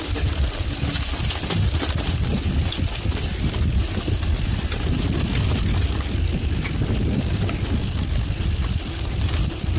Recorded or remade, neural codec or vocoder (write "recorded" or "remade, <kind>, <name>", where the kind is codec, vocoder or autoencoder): recorded